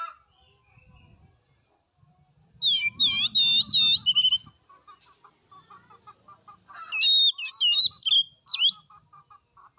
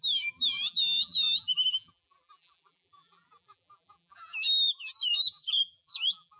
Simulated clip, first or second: second